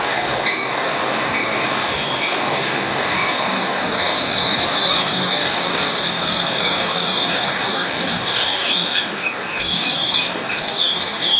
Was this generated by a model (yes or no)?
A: yes